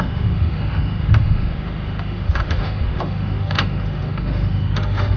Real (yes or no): no